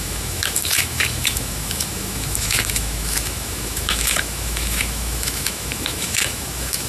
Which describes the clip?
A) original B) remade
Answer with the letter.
B